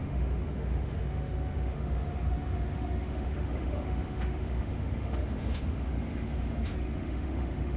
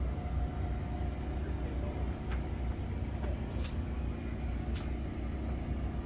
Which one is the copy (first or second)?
first